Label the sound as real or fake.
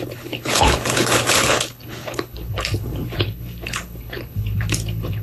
fake